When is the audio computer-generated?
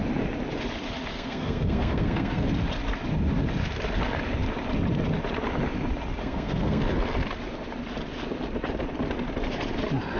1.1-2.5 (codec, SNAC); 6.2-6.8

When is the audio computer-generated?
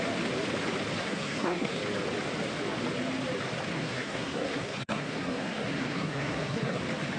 1.0-1.8 (codec, SNAC); 3.7-6.8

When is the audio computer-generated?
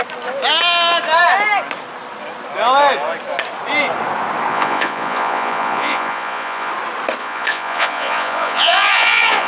4.5-6.7 (vocoder, Vocos); 7.2-9.5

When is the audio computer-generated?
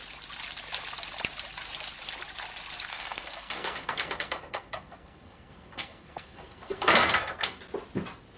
2.9-7.6 (codec, SNAC)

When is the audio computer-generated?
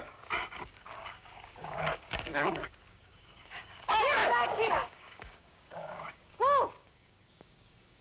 0.0-8.0 (codec, DAC)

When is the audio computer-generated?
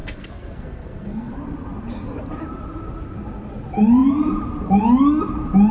0.0-1.3 (codec, SNAC)